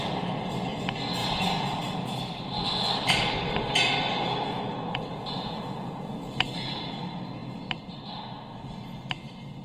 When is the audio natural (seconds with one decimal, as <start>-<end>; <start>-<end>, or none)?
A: 0.0-1.2; 2.2-4.2; 7.0-9.6